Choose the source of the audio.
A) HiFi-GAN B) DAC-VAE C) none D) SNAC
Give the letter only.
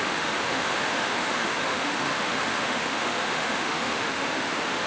B